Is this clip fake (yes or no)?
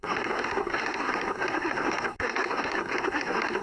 yes